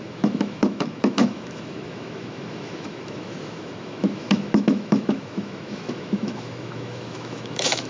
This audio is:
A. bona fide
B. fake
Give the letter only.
B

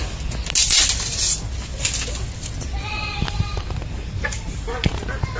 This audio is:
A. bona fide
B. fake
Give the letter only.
A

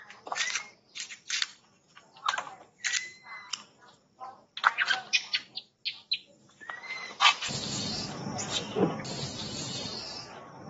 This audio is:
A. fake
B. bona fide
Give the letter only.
B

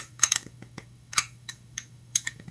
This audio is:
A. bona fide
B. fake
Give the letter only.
B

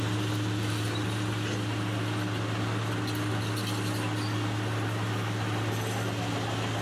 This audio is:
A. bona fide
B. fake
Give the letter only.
A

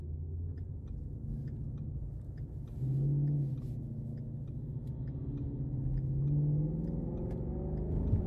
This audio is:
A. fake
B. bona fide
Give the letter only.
B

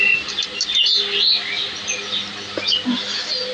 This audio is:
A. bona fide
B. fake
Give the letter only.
A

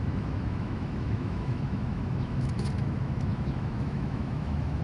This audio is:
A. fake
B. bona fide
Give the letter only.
A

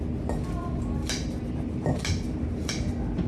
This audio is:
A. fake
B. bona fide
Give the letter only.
B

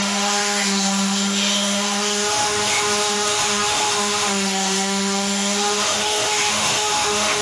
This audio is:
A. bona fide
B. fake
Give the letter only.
B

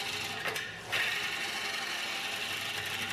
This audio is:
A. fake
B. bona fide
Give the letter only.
B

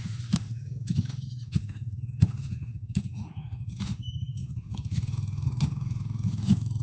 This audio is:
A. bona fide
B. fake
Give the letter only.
B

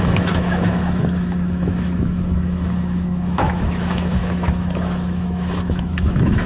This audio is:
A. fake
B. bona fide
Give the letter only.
A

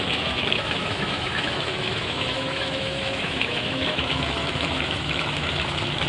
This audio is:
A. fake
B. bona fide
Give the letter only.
A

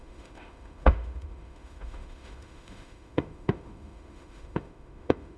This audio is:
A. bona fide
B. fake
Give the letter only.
B